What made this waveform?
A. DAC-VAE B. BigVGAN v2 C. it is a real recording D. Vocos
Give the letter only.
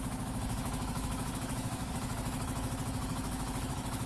A